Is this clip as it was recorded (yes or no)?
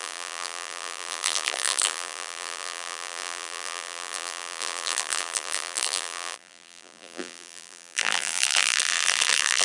no